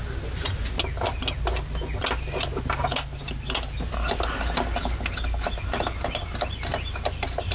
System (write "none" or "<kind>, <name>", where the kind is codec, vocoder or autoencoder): none